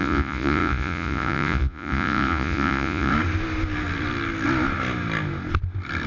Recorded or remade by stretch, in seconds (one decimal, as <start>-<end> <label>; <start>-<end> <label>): 0.0-3.1 remade; 3.1-6.1 recorded

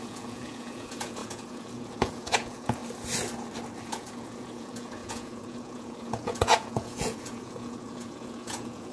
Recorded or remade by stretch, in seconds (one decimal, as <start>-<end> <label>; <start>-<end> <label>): 0.0-2.8 remade; 2.8-3.9 recorded; 3.9-8.9 remade

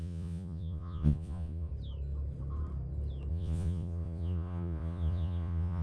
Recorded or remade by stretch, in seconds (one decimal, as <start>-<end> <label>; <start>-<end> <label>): 0.0-1.7 remade; 1.7-3.3 recorded; 3.3-5.8 remade

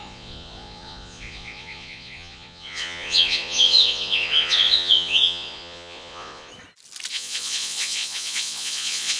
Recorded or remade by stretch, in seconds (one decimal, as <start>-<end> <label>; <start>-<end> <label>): 0.0-6.5 remade; 6.5-7.1 recorded; 7.1-9.2 remade

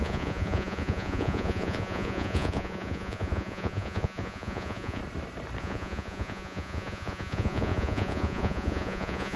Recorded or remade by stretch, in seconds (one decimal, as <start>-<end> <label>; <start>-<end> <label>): 0.0-5.0 remade; 5.0-5.6 recorded; 5.6-9.4 remade

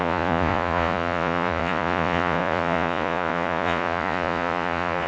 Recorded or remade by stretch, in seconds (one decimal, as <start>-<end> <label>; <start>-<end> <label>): 0.0-5.1 remade